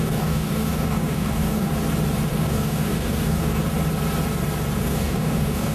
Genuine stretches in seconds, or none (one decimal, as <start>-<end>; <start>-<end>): 1.7-2.3; 3.6-4.8